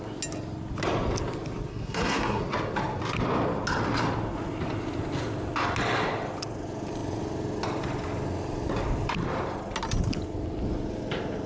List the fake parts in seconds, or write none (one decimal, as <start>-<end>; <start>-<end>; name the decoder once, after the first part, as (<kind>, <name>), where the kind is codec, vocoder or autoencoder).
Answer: 1.7-2.4 (codec, SNAC)